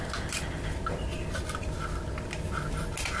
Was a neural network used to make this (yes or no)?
no